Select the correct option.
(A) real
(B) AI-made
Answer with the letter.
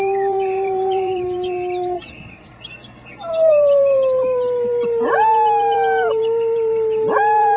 B